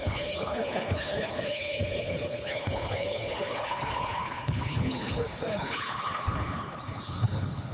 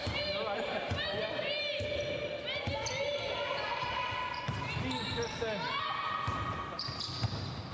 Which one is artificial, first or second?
first